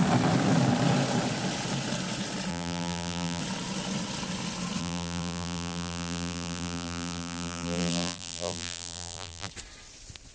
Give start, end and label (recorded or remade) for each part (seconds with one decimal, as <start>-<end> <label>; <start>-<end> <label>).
0.0-2.5 recorded; 2.5-3.4 remade; 3.4-4.8 recorded; 4.8-9.5 remade; 9.5-10.3 recorded